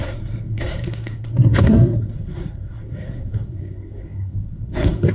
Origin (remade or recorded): remade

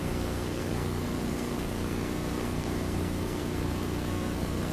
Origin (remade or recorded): remade